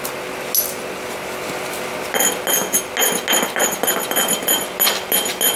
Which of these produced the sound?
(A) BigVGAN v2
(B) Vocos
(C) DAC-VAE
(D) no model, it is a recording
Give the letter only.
D